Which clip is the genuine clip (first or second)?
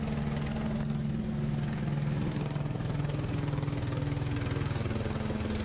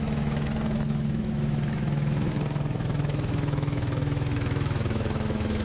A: first